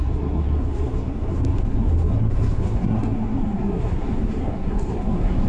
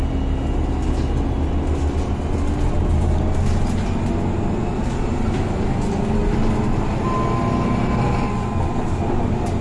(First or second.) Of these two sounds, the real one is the second